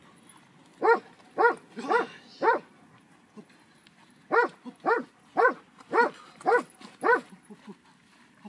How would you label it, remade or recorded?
recorded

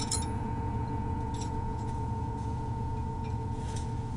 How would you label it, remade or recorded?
remade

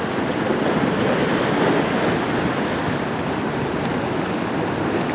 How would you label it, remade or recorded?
recorded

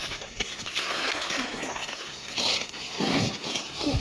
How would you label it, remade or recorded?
remade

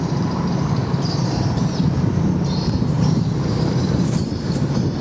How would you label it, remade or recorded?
remade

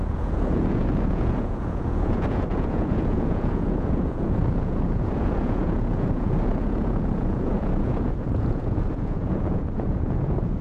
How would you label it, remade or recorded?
remade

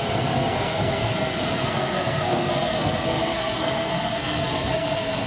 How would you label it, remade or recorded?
remade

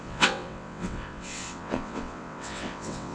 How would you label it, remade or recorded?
remade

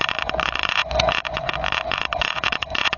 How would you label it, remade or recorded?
remade